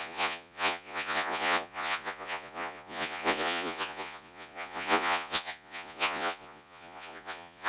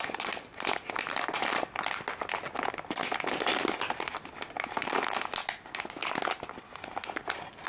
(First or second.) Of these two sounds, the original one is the second